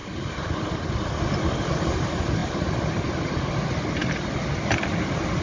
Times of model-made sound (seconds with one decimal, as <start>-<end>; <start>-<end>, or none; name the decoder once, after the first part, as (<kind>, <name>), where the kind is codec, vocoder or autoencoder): 2.4-3.4 (vocoder, BigVGAN v2)